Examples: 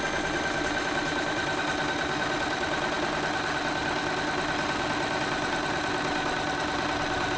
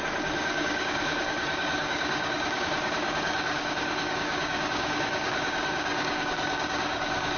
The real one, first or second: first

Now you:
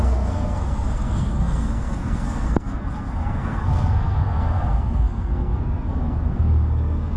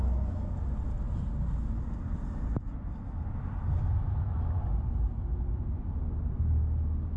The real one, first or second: second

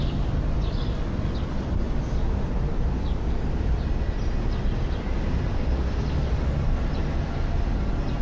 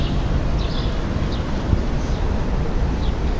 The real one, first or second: first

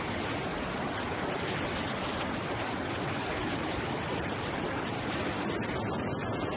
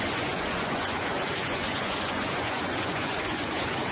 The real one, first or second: first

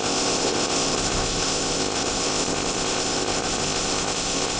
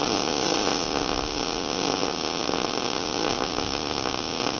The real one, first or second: second